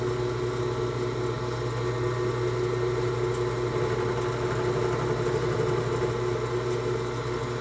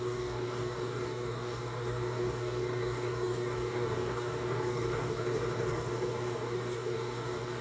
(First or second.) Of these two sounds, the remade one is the second